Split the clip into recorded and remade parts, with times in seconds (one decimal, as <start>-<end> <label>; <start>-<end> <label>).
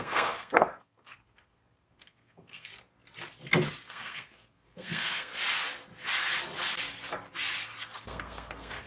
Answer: 0.0-2.7 remade; 2.7-3.9 recorded; 3.9-5.3 remade; 5.3-8.0 recorded; 8.0-8.9 remade